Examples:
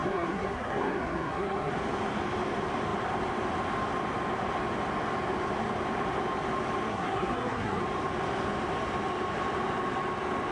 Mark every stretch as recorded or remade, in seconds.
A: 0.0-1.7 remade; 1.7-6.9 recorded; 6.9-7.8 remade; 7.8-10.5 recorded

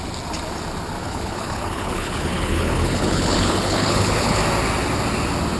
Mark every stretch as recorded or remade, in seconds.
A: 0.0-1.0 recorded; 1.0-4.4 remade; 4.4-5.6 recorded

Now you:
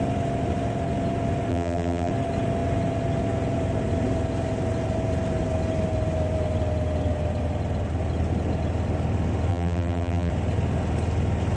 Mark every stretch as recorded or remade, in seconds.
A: 0.0-1.5 recorded; 1.5-2.1 remade; 2.1-9.5 recorded; 9.5-10.3 remade; 10.3-11.6 recorded

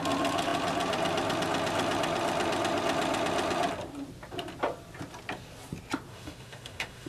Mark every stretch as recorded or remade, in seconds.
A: 0.0-6.1 recorded; 6.1-7.1 remade

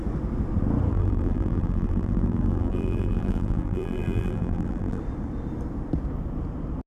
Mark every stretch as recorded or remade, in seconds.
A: 0.0-0.9 recorded; 0.9-5.0 remade; 5.0-6.9 recorded